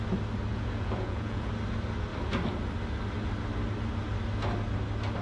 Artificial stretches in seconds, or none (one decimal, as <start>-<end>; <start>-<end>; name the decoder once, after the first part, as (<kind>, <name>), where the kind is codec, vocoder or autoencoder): 0.5-1.5 (vocoder, Vocos)